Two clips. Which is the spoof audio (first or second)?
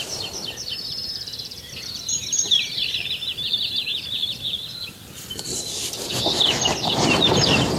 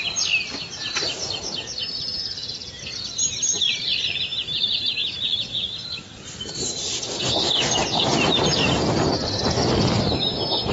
first